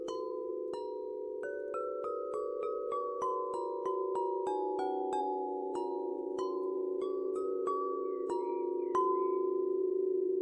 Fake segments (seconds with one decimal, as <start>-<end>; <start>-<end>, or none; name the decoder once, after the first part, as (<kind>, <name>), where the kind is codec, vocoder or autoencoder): 0.0-0.5 (vocoder, BigVGAN v2); 2.6-3.3; 5.2-8.5; 9.8-10.4